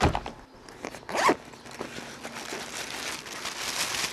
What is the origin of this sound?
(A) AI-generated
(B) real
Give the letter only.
B